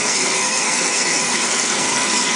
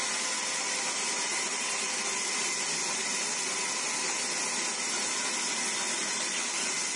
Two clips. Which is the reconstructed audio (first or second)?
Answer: first